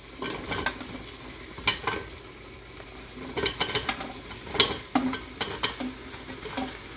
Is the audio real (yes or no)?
yes